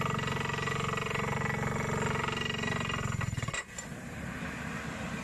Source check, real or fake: real